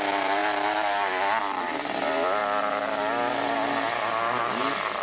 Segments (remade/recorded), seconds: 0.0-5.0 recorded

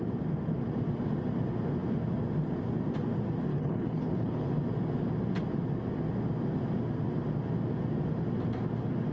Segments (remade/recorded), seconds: 0.0-3.5 recorded; 3.5-4.5 remade; 4.5-9.1 recorded

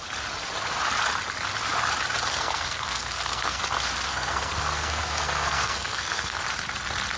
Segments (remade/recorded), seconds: 0.0-2.3 recorded; 2.3-3.6 remade; 3.6-4.1 recorded; 4.1-6.4 remade; 6.4-7.2 recorded

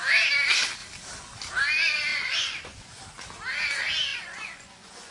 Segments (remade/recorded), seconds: 0.0-2.1 recorded; 2.1-3.0 remade; 3.0-4.1 recorded; 4.1-5.1 remade

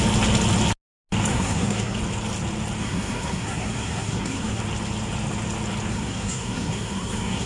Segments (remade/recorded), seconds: 0.0-1.3 recorded; 1.3-2.0 remade; 2.0-2.8 recorded; 2.8-4.6 remade; 4.6-5.9 recorded; 5.9-7.5 remade